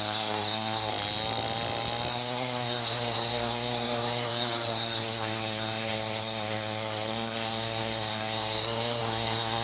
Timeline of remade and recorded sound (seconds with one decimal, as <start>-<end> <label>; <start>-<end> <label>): 0.0-0.9 remade; 0.9-2.1 recorded; 2.1-9.6 remade